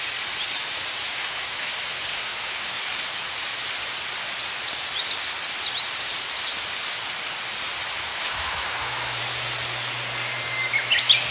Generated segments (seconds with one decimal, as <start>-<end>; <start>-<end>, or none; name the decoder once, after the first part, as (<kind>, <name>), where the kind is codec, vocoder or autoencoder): 1.1-1.7 (autoencoder, DAC-VAE); 2.1-2.8; 8.1-9.2